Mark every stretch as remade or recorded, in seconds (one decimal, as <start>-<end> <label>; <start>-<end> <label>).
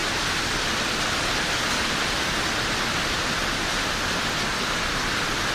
0.0-5.5 recorded